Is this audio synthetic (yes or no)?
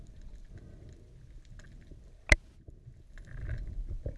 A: no